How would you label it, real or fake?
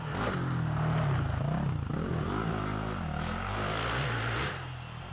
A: real